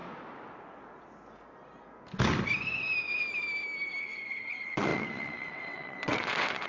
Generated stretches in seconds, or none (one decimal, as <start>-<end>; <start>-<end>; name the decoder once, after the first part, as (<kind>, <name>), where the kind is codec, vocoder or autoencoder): 4.0-6.7 (vocoder, WaveNeXt)